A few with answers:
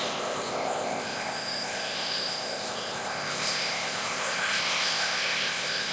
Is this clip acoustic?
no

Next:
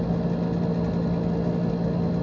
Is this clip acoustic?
yes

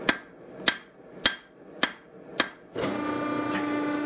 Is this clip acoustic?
yes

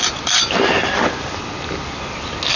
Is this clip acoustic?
yes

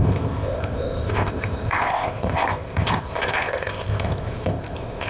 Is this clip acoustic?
no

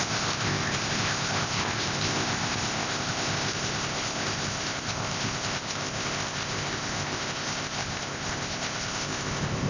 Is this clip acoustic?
no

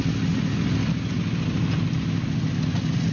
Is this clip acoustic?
yes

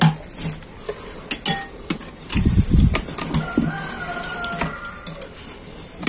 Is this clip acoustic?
yes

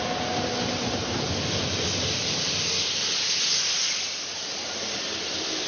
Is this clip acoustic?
yes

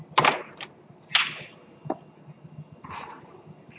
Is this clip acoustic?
yes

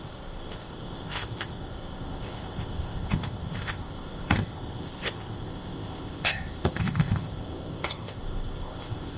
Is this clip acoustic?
no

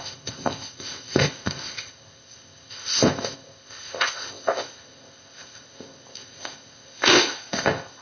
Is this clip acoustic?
no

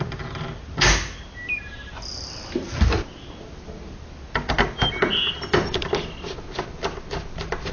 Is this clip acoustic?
yes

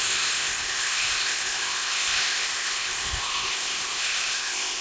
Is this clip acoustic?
no